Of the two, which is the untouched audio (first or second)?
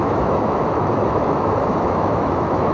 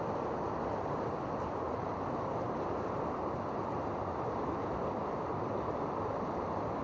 second